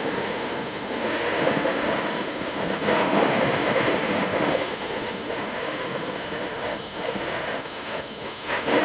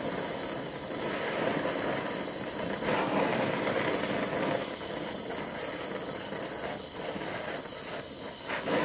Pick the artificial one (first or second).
first